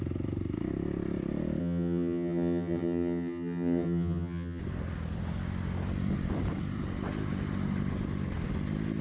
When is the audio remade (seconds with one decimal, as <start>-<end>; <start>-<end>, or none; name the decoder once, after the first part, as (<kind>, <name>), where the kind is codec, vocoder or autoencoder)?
1.6-4.6 (vocoder, HiFi-GAN)